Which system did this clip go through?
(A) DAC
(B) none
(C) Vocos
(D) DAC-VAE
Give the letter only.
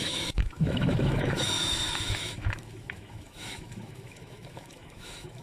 D